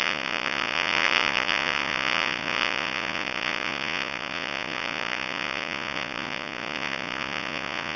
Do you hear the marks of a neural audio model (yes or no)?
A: yes